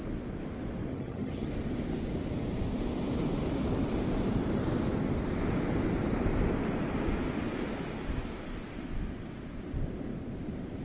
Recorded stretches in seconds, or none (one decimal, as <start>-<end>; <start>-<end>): 0.0-0.9; 1.5-10.8